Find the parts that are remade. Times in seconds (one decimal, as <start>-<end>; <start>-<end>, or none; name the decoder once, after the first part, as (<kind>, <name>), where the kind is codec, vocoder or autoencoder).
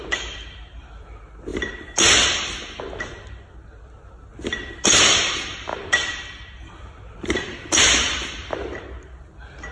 none